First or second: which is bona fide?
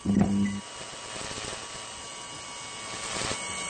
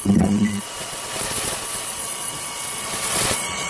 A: first